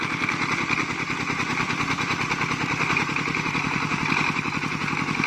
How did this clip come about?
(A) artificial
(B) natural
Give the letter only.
A